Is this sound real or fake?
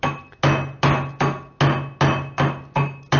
real